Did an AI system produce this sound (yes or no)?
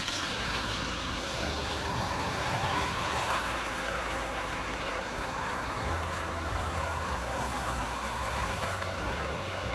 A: yes